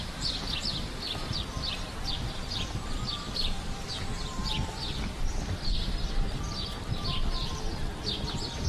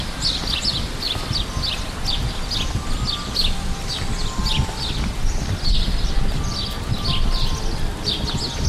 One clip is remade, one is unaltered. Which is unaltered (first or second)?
second